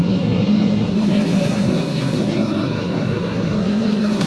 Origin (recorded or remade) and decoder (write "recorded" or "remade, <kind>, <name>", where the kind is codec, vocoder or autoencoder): remade, codec, SNAC